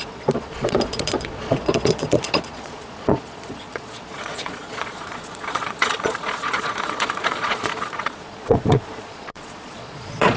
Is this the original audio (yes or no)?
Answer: no